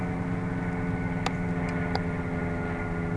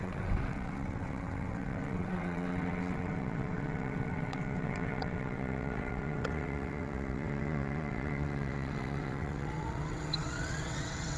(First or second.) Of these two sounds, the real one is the first